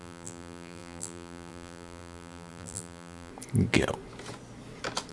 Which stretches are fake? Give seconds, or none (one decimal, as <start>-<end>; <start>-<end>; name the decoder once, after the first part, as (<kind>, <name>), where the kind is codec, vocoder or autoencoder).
0.0-3.3 (vocoder, BigVGAN v2)